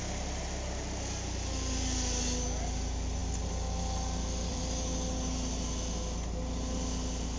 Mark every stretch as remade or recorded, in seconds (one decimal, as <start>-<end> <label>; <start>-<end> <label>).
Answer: 0.0-3.2 recorded; 3.2-4.6 remade; 4.6-7.4 recorded